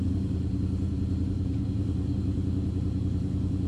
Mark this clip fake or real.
fake